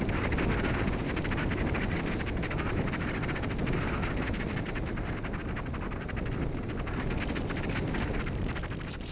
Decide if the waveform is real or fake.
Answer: real